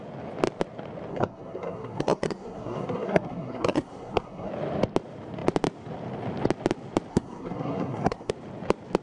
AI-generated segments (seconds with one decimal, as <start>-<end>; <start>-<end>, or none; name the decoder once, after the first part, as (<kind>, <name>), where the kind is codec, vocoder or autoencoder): 1.1-4.5 (codec, SNAC); 7.1-8.3

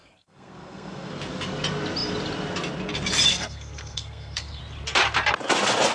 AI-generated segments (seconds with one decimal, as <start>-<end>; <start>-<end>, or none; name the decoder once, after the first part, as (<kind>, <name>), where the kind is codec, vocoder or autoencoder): 0.0-1.1 (codec, SNAC); 3.3-4.6

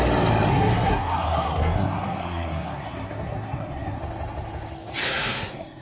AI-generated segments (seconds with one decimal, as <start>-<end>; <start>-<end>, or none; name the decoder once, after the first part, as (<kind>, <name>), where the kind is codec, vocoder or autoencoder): 0.5-4.0 (codec, SNAC); 5.0-5.8

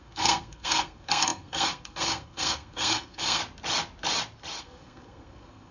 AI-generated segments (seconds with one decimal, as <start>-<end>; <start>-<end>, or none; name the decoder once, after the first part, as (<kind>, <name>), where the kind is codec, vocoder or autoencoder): 0.0-3.4 (codec, SNAC); 4.6-5.7

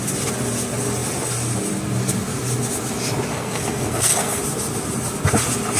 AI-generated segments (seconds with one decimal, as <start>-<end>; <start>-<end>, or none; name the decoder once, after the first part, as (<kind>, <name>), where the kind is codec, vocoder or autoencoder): 3.3-4.4 (codec, SNAC)

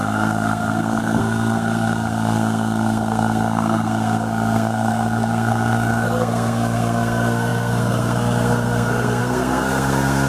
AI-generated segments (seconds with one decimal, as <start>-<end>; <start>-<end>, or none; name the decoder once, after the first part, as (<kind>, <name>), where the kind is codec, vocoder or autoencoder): 0.0-10.3 (codec, SNAC)

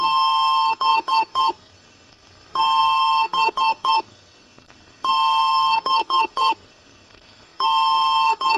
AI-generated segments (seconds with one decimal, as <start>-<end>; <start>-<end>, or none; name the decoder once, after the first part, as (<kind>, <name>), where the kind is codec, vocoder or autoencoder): 0.0-8.6 (codec, SNAC)

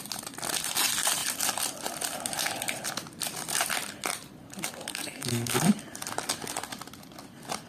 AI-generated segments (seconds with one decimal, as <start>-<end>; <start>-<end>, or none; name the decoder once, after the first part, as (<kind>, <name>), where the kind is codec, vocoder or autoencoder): 4.9-5.7 (codec, SNAC)